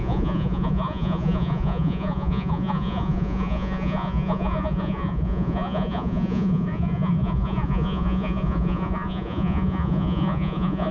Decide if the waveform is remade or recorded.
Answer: remade